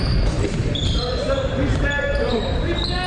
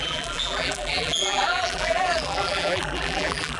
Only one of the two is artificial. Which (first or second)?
second